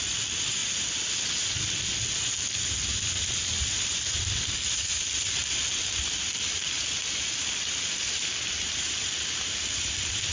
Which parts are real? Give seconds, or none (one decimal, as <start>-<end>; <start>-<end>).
0.0-10.3